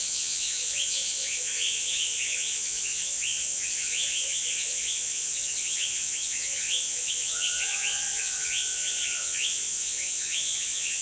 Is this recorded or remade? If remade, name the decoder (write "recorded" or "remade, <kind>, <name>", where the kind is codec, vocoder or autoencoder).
remade, vocoder, Vocos